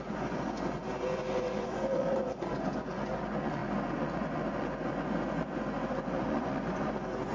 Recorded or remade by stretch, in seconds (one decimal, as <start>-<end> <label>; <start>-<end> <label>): 0.0-7.3 remade